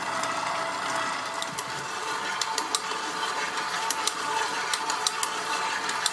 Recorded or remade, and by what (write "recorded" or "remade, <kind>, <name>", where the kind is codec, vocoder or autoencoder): recorded